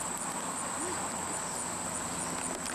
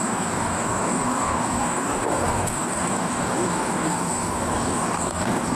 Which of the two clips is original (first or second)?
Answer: first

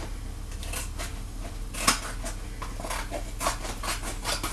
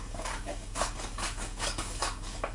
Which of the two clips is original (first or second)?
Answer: first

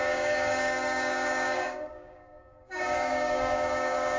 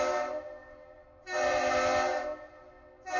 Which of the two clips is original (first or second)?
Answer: second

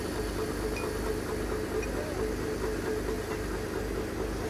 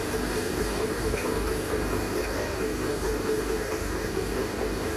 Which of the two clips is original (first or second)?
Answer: first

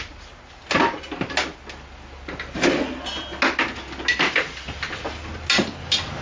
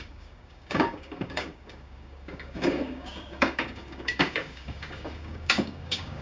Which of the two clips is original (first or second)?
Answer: first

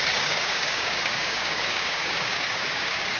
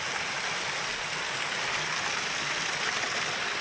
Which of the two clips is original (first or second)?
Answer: second